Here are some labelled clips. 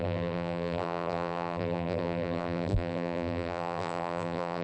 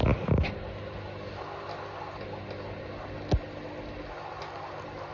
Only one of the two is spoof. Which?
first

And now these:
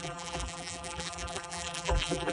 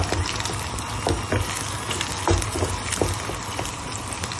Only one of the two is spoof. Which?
first